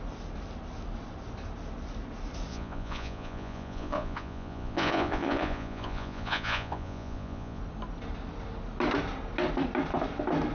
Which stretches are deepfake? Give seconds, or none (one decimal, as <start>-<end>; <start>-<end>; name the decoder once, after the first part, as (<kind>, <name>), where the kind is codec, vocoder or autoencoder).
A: 2.5-7.6 (vocoder, Vocos)